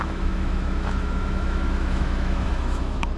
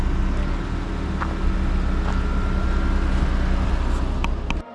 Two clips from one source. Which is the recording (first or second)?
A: second